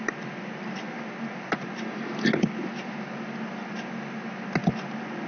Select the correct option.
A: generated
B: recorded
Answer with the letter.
B